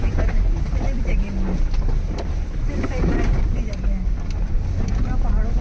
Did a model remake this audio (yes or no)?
no